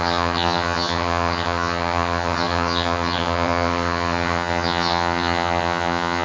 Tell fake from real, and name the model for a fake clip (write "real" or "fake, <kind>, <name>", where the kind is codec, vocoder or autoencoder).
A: fake, vocoder, HiFi-GAN